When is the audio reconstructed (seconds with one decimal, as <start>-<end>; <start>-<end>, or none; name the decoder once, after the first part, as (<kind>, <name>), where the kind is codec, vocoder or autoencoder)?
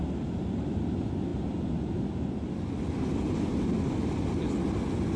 none